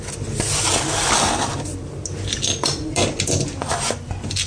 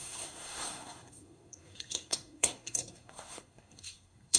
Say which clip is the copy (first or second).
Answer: second